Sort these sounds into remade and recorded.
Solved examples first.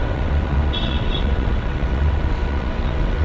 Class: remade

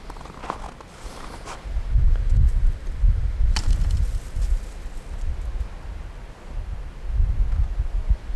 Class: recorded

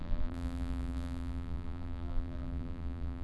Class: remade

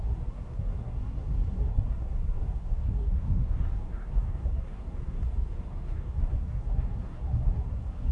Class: remade